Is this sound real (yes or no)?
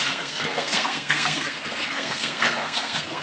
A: no